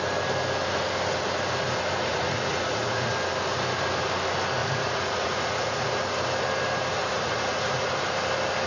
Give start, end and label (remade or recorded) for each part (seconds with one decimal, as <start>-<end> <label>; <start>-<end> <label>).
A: 0.0-2.1 recorded; 2.1-3.1 remade; 3.1-4.6 recorded; 4.6-5.9 remade; 5.9-7.0 recorded; 7.0-7.9 remade; 7.9-8.7 recorded